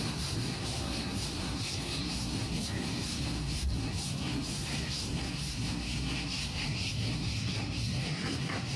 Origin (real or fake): fake